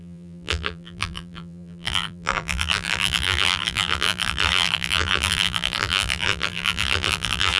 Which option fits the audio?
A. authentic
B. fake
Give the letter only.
B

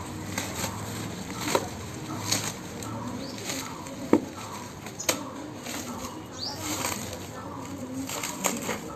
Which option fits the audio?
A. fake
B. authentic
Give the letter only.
B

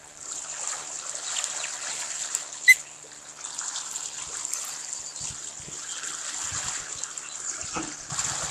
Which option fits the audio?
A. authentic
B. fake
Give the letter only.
A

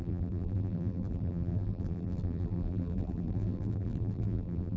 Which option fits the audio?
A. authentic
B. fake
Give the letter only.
B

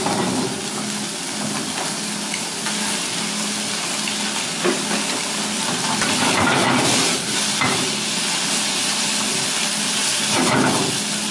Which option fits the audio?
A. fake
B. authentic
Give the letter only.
B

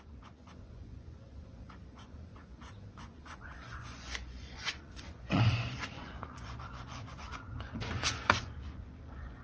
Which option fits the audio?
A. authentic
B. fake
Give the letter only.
B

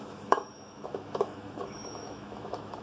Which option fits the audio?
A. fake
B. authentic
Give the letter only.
A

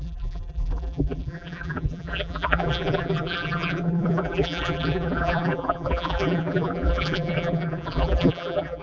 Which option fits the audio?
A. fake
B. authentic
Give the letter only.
A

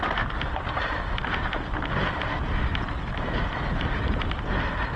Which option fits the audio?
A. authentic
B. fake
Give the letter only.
A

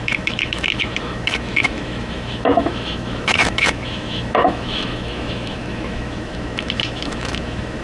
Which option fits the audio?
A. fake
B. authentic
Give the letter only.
A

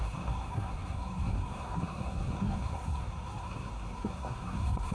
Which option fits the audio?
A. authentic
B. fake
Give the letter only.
B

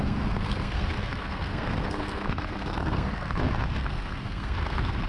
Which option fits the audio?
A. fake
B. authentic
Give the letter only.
A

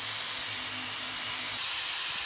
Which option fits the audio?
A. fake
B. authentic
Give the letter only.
B